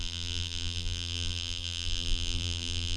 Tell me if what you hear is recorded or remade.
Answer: remade